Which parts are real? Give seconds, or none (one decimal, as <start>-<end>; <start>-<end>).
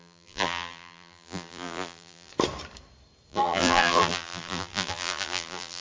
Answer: 2.3-3.3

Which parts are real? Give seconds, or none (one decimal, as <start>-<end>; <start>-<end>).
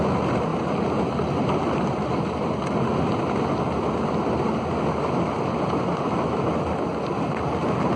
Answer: 0.0-0.5; 1.9-8.0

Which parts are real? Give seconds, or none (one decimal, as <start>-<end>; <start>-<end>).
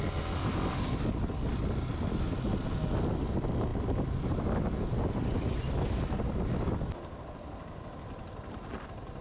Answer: 0.0-1.5; 2.3-3.7; 5.7-9.2